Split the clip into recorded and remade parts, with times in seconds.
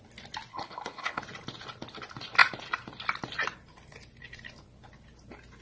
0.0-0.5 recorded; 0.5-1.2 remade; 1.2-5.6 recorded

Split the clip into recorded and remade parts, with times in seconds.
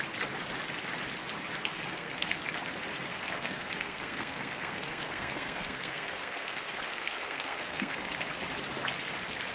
0.0-1.7 recorded; 1.7-2.4 remade; 2.4-3.1 recorded; 3.1-8.1 remade; 8.1-9.5 recorded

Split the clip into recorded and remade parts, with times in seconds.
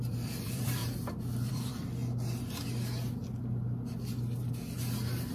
0.0-0.8 remade; 0.8-1.5 recorded; 1.5-2.0 remade; 2.0-5.3 recorded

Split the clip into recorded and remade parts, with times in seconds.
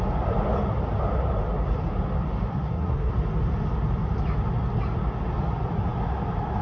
0.0-2.5 recorded; 2.5-3.1 remade; 3.1-6.6 recorded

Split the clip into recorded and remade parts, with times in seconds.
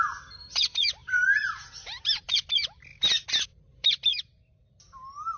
0.0-5.4 recorded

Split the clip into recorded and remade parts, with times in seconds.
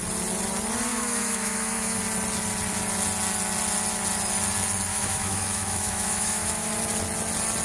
0.0-0.9 recorded; 0.9-2.0 remade; 2.0-4.9 recorded; 4.9-6.7 remade; 6.7-7.6 recorded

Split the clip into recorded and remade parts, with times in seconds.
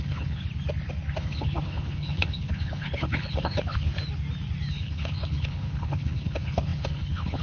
0.0-0.4 remade; 0.4-1.2 recorded; 1.2-3.9 remade; 3.9-4.7 recorded; 4.7-7.4 remade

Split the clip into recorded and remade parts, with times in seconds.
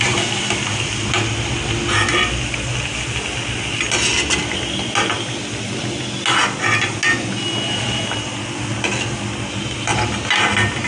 0.0-10.9 recorded